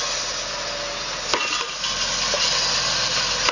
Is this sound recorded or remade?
recorded